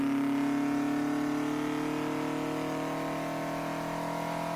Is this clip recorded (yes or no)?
yes